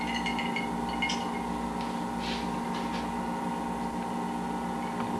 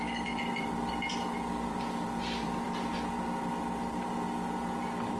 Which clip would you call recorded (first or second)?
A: first